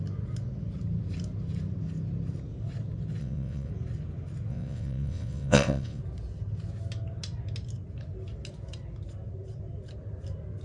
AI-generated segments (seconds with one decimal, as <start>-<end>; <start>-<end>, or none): 3.2-3.7; 4.5-6.0

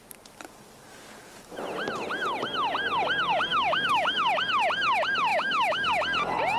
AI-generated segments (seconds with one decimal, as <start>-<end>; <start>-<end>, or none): 3.5-4.2; 5.3-5.9

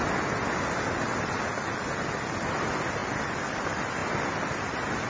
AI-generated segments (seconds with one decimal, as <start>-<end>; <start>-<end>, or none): none

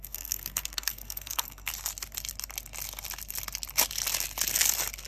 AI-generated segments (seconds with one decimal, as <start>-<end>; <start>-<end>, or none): 0.0-1.7

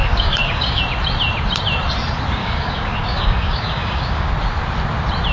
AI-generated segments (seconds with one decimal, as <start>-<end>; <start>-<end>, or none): 0.0-0.8; 2.4-4.3

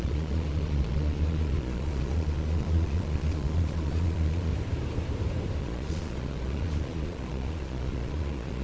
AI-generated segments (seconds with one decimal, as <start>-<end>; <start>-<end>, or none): 0.0-4.5; 5.6-8.6

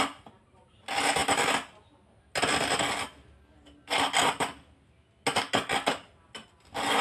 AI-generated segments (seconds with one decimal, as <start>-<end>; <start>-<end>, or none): none

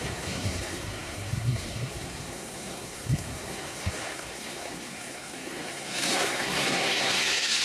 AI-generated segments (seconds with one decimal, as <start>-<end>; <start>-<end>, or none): 0.0-7.6